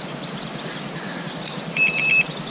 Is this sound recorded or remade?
recorded